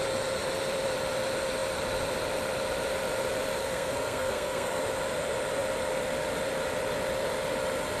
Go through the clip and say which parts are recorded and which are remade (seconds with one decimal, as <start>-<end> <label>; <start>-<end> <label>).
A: 0.0-3.6 recorded; 3.6-4.8 remade; 4.8-8.0 recorded